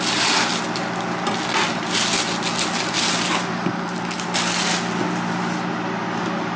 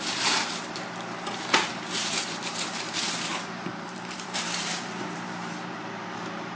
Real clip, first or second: first